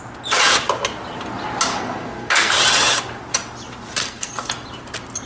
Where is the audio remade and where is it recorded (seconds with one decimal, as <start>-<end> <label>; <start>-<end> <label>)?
0.0-1.7 recorded; 1.7-2.5 remade; 2.5-4.0 recorded; 4.0-4.5 remade; 4.5-5.3 recorded